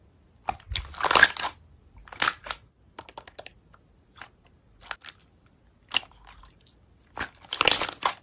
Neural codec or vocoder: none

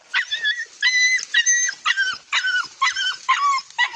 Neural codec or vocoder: none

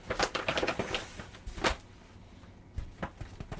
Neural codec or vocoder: none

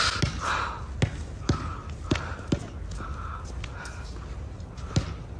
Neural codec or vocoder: none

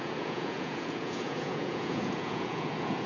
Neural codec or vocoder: vocoder, Vocos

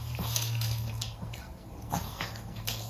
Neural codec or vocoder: codec, SNAC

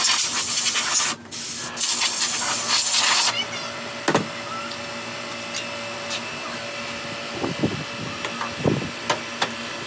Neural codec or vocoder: none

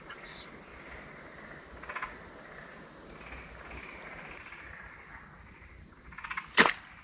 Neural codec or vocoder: none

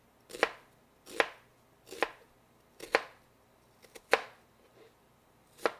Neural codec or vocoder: none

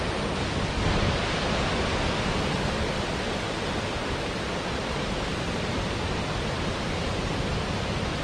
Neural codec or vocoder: none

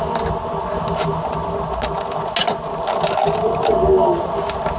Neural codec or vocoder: none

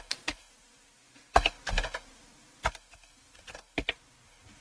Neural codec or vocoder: none